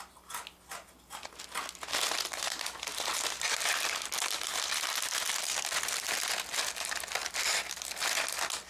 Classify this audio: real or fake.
real